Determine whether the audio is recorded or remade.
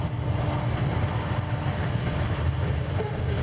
recorded